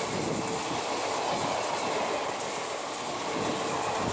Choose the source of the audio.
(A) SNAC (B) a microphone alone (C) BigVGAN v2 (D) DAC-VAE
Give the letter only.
B